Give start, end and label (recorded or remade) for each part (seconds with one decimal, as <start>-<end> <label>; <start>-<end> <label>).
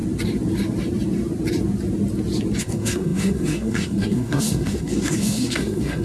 0.0-2.6 recorded; 2.6-6.0 remade